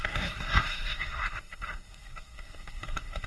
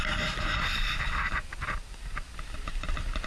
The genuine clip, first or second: second